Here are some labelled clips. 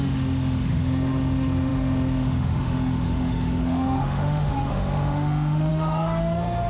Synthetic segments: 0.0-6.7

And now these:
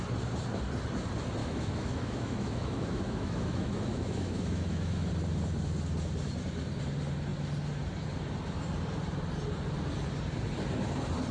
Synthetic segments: 1.4-5.1

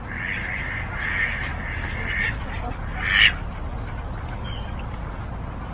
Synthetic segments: none

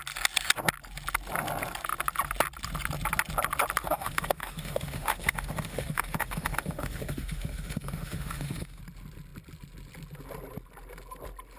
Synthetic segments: 3.8-8.8

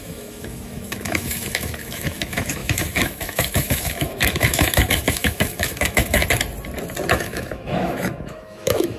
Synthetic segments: 0.0-6.2; 7.1-9.0